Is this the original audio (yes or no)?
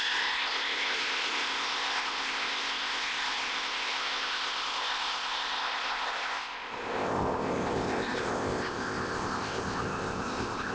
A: no